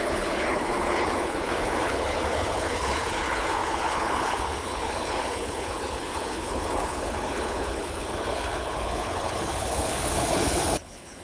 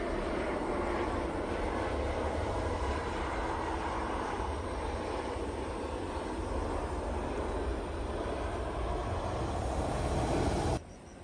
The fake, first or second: first